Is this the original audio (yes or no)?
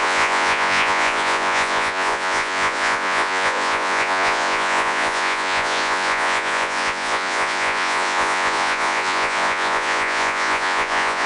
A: no